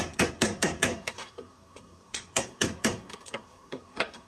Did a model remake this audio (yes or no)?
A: yes